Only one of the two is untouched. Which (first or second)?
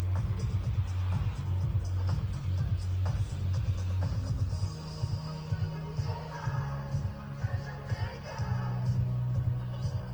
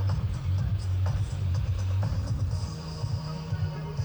first